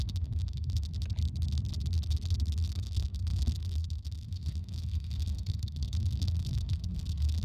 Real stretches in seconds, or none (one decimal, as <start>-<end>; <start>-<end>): 0.9-2.7